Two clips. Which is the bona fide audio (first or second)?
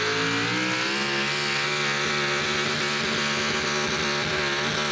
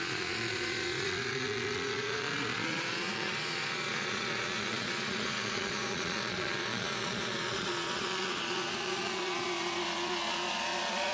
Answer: first